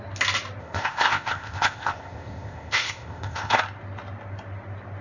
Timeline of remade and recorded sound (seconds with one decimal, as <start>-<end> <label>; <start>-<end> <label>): 0.0-0.6 recorded; 0.6-3.6 remade; 3.6-5.0 recorded